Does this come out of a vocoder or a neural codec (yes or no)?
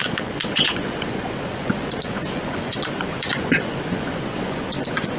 yes